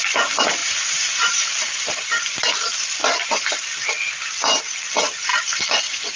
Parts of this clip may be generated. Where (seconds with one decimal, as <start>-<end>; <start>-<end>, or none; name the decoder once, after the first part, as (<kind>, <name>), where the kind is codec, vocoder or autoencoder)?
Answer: 0.6-2.4 (vocoder, BigVGAN v2); 3.0-4.0; 5.3-5.8